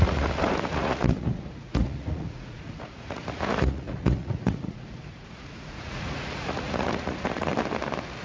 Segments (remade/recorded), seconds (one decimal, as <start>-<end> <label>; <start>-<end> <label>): 0.0-7.5 remade; 7.5-8.2 recorded